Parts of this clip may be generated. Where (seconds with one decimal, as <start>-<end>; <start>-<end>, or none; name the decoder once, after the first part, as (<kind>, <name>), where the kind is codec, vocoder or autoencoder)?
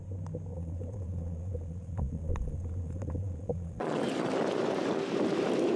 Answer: 0.5-4.0 (vocoder, Vocos)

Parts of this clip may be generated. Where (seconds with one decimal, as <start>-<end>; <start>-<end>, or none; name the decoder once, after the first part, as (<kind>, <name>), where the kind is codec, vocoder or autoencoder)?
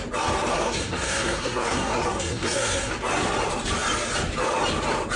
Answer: 0.5-2.9 (codec, SNAC)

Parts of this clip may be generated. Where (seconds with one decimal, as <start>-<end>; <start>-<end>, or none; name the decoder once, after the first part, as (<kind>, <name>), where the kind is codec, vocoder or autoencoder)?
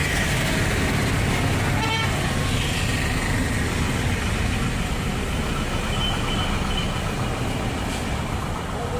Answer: none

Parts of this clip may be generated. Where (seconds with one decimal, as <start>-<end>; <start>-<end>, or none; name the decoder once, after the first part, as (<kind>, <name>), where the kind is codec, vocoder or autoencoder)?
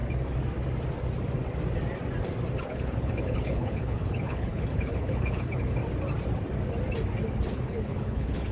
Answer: 2.6-5.8 (codec, HILCodec); 7.5-8.5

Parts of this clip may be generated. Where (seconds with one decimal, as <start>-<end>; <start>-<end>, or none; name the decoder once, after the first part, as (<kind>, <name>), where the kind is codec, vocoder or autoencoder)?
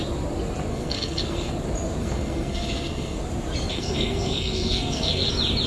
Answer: 0.7-1.5 (codec, SNAC); 2.0-3.2; 3.7-5.3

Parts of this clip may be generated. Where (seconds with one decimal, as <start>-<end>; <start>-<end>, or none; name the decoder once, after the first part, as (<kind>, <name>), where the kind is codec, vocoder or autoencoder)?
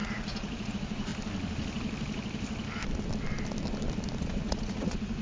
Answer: 0.0-1.1 (vocoder, Vocos); 4.2-5.2